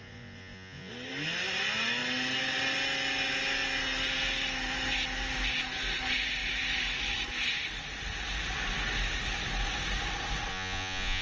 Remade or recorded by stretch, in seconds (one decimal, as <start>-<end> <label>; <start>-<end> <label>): 0.0-0.9 remade; 0.9-10.5 recorded; 10.5-11.2 remade